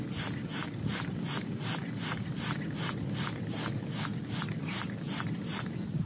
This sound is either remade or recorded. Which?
recorded